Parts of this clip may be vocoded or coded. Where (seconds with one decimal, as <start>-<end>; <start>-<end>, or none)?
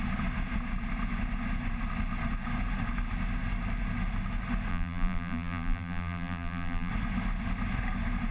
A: 4.7-6.9